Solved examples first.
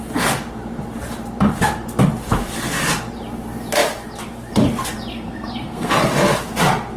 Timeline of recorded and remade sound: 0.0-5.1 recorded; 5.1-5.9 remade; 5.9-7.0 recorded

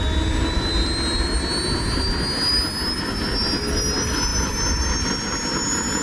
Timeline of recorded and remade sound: 0.0-6.0 recorded

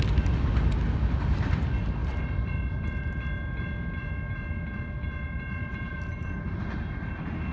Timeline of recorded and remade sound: 0.0-7.5 recorded

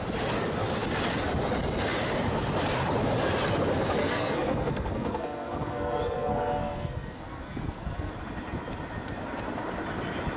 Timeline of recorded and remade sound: 0.0-4.0 recorded; 4.0-8.1 remade; 8.1-10.4 recorded